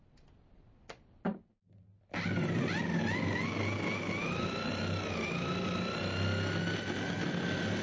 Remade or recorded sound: recorded